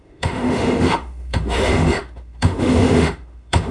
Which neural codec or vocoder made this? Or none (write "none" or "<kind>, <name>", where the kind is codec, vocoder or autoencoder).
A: autoencoder, DAC-VAE